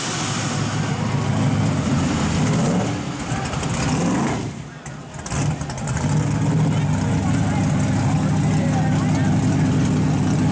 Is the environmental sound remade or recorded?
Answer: recorded